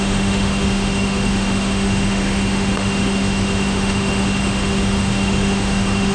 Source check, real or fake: fake